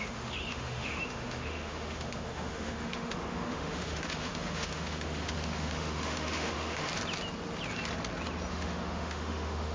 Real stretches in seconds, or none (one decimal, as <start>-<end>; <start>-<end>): 6.9-8.5